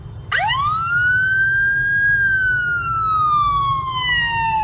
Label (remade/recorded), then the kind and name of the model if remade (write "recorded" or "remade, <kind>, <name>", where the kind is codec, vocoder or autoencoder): recorded